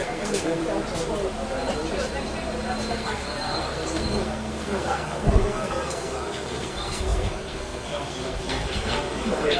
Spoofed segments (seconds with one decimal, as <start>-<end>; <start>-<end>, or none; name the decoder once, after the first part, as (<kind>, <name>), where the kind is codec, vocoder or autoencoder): 0.0-0.6 (codec, SNAC); 2.9-9.6